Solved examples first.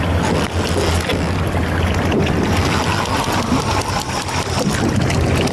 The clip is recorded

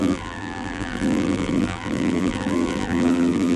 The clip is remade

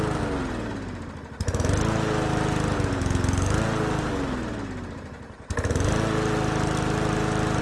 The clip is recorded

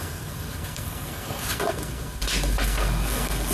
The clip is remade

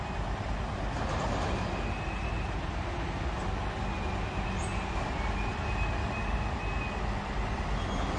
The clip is recorded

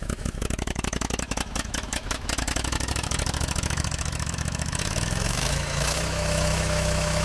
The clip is remade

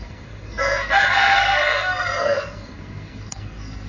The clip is remade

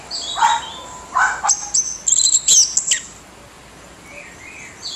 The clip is recorded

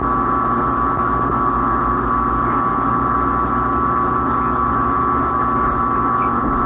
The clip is recorded